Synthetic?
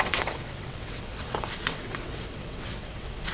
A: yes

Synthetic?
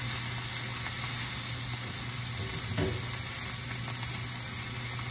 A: no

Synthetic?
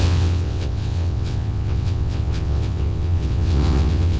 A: yes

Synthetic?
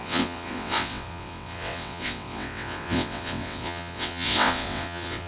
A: yes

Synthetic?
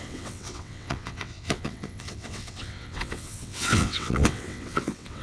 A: yes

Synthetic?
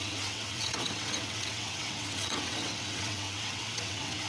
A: yes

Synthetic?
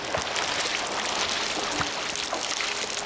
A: no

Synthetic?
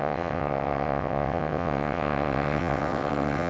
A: yes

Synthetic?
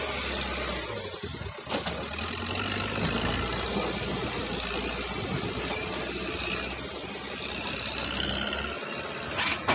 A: no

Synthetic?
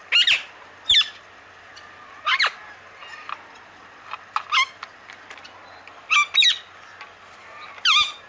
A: no